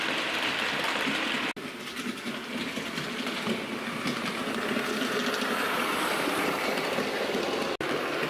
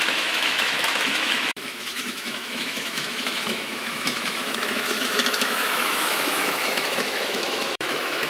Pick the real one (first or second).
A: first